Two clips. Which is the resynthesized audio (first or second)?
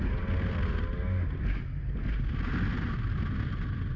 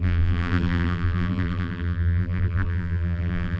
second